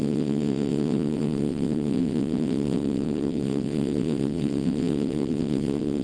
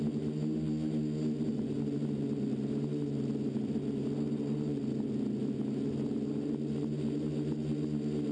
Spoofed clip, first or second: first